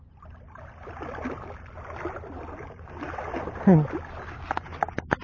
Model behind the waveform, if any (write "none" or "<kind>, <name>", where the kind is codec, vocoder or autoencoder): none